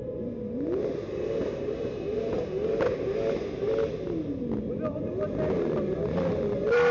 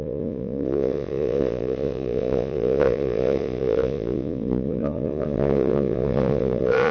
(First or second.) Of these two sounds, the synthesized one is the second